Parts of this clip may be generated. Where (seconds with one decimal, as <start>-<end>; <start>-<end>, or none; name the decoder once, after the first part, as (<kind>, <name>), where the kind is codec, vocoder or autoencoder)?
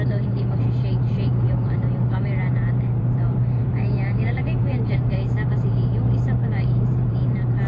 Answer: 0.0-7.7 (vocoder, BigVGAN v2)